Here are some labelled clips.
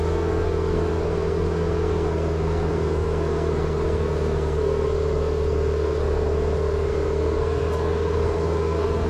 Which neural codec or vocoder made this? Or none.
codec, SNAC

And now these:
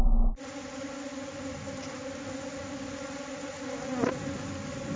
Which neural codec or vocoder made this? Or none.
none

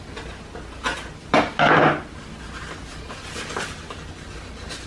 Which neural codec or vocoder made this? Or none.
none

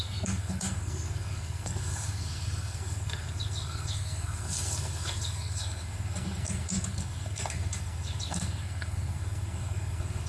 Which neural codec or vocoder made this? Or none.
codec, SNAC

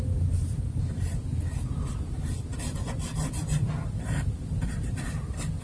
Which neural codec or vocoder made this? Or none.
none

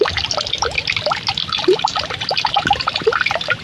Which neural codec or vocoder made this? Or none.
none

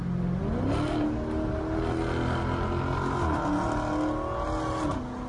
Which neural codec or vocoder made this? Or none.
none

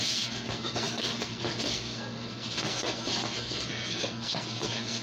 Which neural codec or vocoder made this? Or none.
codec, SNAC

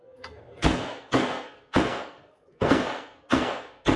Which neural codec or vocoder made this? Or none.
codec, SNAC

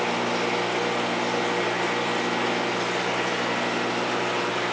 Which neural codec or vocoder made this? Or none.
none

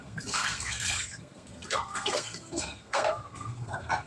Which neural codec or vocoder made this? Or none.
codec, SNAC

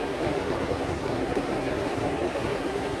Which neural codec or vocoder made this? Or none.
codec, SNAC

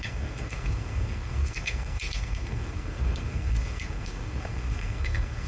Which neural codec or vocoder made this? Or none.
codec, SNAC